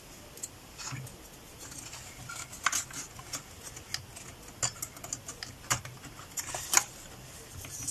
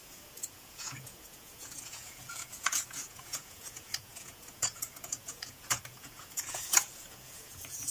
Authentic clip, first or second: first